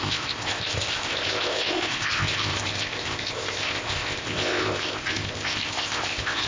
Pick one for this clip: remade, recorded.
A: remade